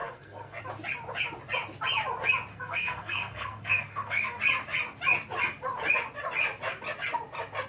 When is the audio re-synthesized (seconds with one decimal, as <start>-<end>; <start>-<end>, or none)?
0.0-0.6; 2.5-4.4